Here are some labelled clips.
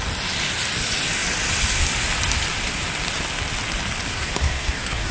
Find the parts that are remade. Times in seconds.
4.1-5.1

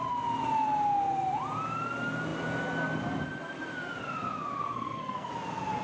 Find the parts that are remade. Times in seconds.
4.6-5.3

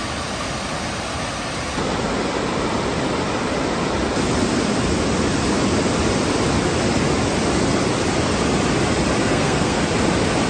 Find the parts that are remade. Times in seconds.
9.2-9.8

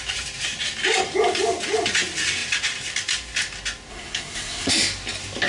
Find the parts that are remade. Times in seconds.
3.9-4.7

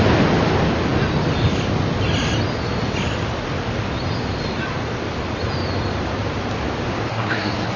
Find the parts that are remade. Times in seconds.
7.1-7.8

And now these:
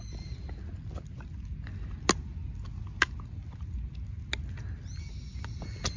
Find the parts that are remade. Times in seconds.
none

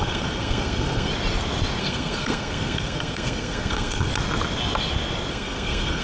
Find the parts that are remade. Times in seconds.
0.0-1.1; 1.8-4.1; 5.3-6.0

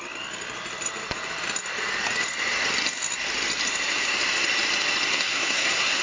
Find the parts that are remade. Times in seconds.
5.1-6.0